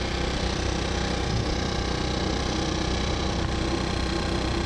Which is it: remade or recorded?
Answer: recorded